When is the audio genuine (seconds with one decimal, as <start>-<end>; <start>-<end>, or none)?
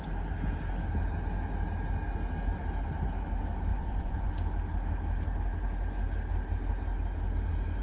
0.0-3.7; 4.3-7.8